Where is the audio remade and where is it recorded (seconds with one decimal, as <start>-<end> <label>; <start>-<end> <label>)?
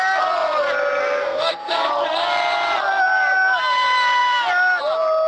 0.0-1.0 recorded; 1.0-1.9 remade; 1.9-5.3 recorded